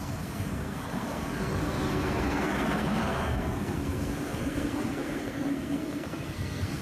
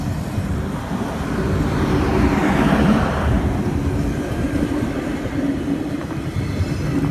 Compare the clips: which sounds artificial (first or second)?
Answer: first